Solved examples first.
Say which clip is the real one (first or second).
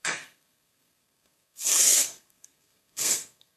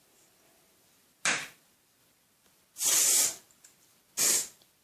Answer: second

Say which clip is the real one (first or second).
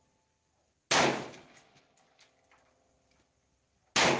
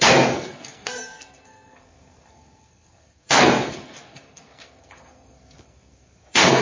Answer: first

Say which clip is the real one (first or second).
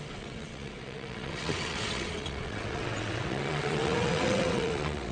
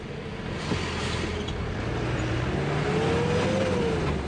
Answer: second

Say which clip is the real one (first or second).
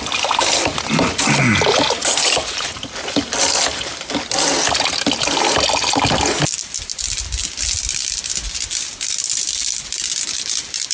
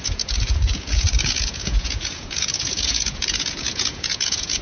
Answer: first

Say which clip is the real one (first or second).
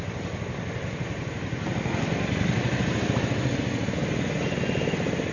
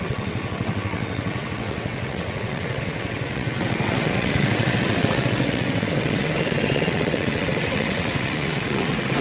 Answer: first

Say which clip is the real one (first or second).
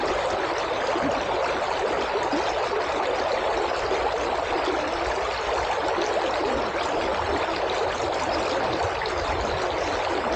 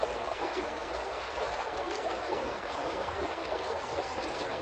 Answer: first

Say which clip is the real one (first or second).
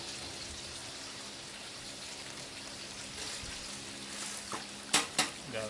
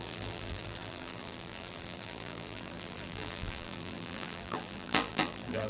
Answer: first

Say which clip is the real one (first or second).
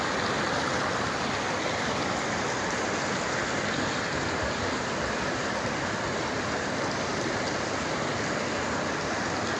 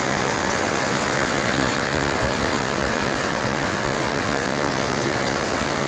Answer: first